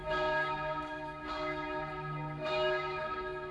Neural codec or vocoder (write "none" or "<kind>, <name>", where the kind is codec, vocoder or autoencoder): autoencoder, DAC-VAE